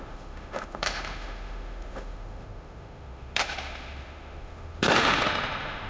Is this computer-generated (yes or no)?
yes